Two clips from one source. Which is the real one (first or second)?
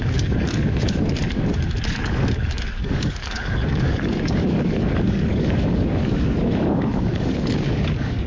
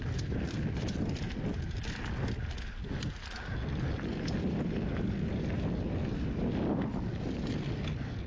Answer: second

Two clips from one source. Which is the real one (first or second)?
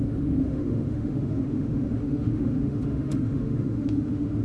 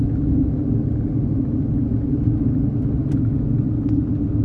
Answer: second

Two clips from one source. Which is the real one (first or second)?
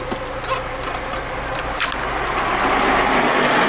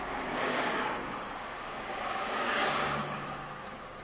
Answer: first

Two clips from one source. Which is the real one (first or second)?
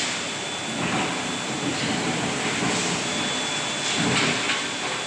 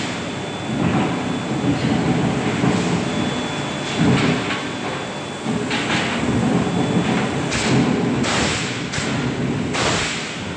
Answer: second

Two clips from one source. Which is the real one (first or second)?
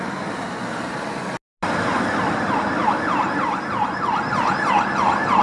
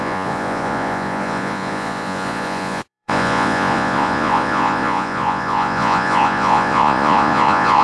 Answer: first